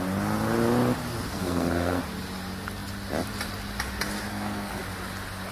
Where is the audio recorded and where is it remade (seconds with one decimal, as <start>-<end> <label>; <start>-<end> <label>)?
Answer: 0.0-1.3 recorded; 1.3-2.0 remade; 2.0-4.3 recorded; 4.3-4.8 remade; 4.8-5.5 recorded